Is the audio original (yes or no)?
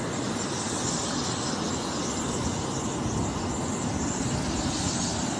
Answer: yes